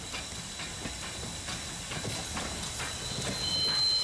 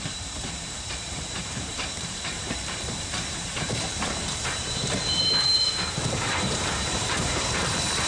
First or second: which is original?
first